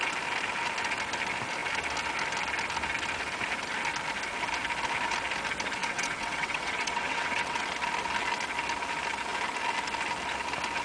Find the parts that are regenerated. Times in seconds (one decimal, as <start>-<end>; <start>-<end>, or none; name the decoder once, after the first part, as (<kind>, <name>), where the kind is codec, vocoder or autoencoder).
5.8-7.6 (vocoder, WaveNeXt)